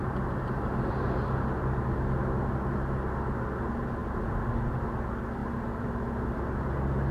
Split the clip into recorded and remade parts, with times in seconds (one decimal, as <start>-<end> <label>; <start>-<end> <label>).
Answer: 0.0-5.4 recorded; 5.4-6.4 remade; 6.4-7.1 recorded